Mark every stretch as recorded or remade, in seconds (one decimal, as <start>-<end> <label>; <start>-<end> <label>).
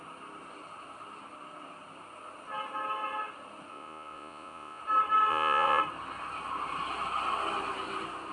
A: 0.0-3.7 recorded; 3.7-4.8 remade; 4.8-5.3 recorded; 5.3-5.8 remade; 5.8-8.3 recorded